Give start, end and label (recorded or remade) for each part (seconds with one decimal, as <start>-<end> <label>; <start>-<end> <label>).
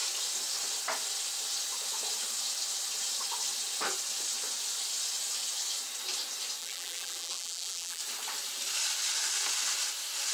0.0-6.6 recorded; 6.6-8.0 remade; 8.0-10.3 recorded